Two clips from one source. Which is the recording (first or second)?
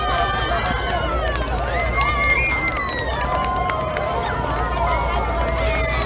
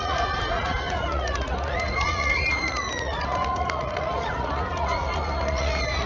first